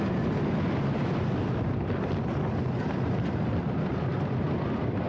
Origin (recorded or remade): recorded